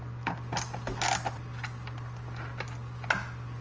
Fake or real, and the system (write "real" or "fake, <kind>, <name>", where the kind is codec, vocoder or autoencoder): real